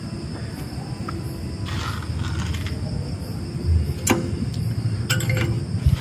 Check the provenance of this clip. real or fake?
real